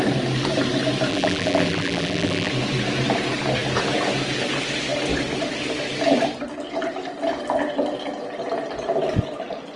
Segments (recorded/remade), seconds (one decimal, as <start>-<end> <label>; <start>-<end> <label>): 0.0-1.1 recorded; 1.1-2.5 remade; 2.5-9.8 recorded